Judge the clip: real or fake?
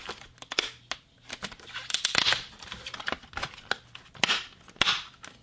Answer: real